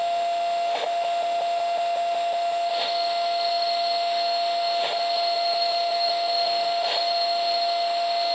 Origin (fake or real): fake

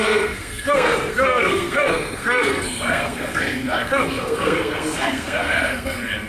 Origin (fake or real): fake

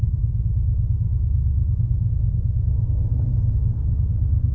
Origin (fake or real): real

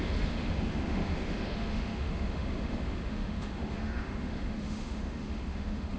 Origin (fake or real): fake